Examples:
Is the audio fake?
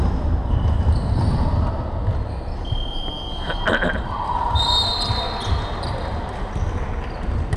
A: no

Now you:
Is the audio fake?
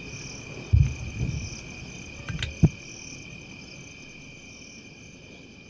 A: no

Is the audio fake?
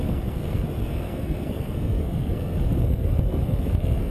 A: yes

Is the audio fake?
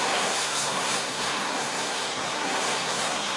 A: yes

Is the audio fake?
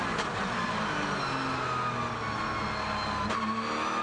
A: no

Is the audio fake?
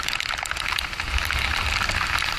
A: no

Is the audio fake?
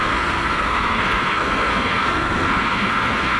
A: yes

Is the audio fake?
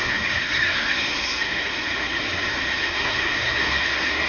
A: yes